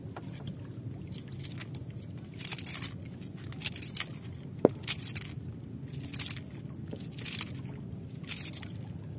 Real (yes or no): yes